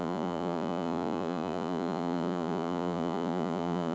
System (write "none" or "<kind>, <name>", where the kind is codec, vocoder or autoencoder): vocoder, Vocos